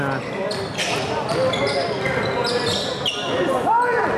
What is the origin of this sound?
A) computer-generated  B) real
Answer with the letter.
B